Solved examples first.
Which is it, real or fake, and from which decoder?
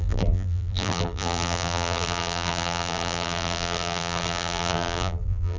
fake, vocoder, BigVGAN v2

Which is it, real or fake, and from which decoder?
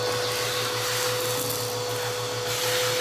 real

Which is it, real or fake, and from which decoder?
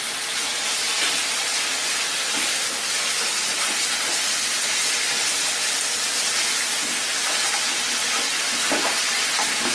real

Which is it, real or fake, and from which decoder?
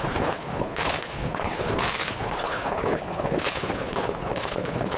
fake, codec, HILCodec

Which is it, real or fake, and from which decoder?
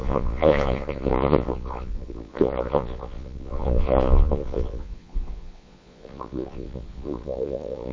fake, vocoder, Vocos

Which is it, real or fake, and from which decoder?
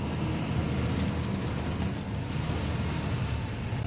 real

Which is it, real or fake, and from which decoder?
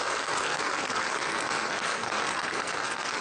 fake, codec, SNAC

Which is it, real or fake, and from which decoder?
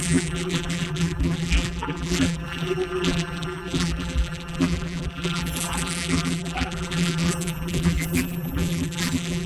fake, vocoder, BigVGAN v2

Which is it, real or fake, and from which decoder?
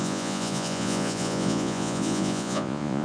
fake, vocoder, Vocos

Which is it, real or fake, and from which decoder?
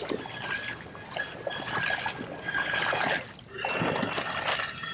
real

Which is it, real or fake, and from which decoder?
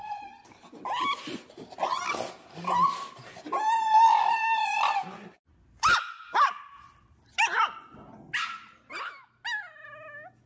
real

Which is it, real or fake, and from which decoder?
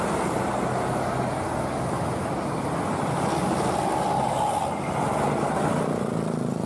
real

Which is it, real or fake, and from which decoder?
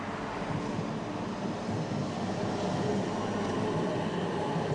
real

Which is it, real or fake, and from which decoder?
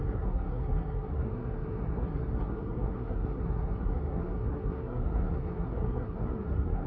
fake, codec, SNAC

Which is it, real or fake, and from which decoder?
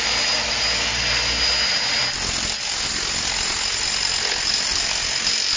real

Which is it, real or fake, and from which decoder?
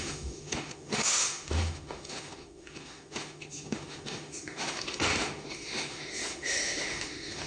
fake, autoencoder, DAC-VAE